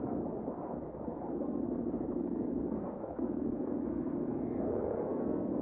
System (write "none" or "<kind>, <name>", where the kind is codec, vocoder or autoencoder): codec, SNAC